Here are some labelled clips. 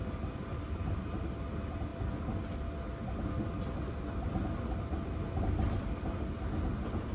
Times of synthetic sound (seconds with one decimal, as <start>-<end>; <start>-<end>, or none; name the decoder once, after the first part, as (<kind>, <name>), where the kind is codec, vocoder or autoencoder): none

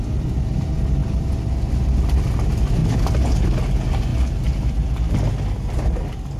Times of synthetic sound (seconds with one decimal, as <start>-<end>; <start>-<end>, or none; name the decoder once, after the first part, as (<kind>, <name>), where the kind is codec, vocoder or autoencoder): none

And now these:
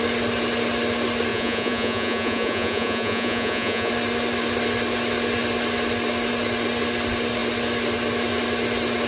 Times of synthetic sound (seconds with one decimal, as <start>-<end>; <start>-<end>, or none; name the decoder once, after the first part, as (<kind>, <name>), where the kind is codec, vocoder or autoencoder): 1.3-3.9 (vocoder, Vocos)

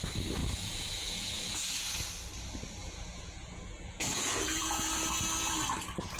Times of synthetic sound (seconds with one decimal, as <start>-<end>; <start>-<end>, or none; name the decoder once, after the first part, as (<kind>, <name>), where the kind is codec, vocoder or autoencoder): 0.4-1.6 (vocoder, Vocos); 2.8-4.8

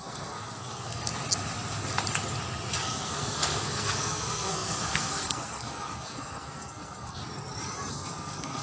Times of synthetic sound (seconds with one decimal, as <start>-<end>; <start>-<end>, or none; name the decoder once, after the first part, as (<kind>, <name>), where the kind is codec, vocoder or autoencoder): 0.0-1.1 (codec, SNAC); 2.8-7.2; 7.9-8.6